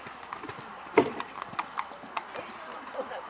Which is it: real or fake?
real